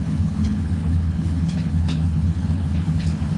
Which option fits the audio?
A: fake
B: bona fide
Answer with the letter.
A